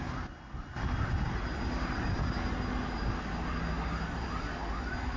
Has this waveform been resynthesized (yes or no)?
no